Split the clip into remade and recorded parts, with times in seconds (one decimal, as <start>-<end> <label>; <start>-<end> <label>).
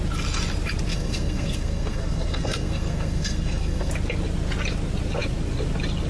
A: 0.0-0.9 recorded; 0.9-3.9 remade; 3.9-6.1 recorded